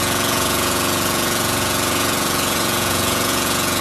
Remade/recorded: remade